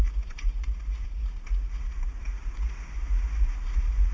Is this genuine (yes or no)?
no